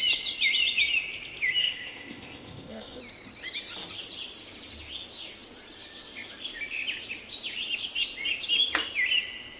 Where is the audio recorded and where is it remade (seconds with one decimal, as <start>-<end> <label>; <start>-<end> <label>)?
0.0-1.6 recorded; 1.6-3.0 remade; 3.0-9.6 recorded